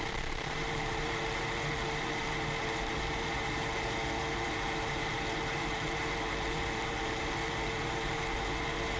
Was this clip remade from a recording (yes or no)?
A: yes